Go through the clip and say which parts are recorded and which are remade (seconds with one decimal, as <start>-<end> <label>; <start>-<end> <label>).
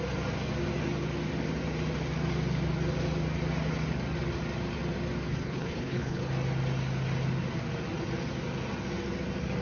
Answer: 0.0-5.3 recorded; 5.3-6.3 remade; 6.3-9.6 recorded